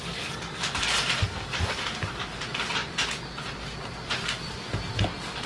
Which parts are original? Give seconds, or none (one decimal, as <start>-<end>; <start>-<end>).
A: 0.0-5.5